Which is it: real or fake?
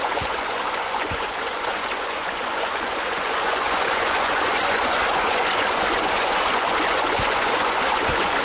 fake